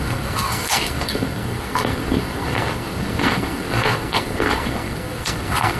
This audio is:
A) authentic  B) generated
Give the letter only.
B